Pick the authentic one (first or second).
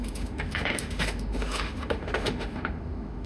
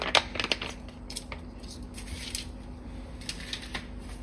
second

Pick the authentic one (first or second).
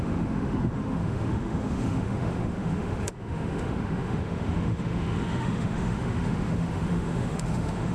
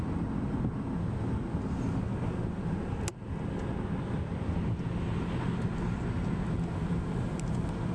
second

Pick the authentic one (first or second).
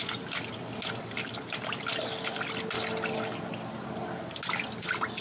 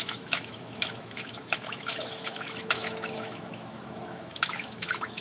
first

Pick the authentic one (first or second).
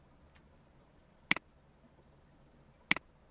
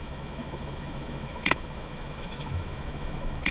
first